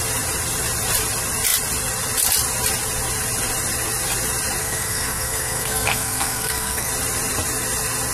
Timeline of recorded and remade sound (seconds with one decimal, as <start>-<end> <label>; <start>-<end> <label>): 0.0-4.6 recorded; 4.6-6.9 remade; 6.9-8.1 recorded